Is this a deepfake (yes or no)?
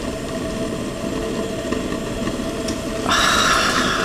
no